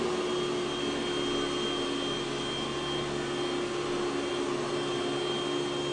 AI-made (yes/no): no